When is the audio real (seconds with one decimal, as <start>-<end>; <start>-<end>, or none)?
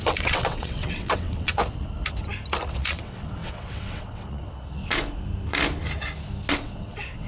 1.6-2.7; 4.8-6.6